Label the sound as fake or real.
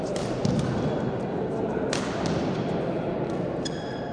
real